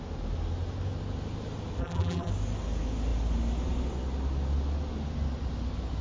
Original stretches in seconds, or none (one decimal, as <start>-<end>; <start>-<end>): 0.0-1.8; 2.3-6.0